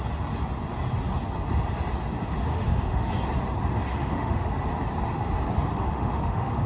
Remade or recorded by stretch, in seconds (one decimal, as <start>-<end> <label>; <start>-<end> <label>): 0.0-2.5 recorded; 2.5-3.1 remade; 3.1-3.9 recorded; 3.9-4.5 remade; 4.5-5.7 recorded; 5.7-6.7 remade